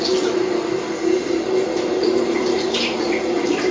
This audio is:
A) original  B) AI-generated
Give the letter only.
B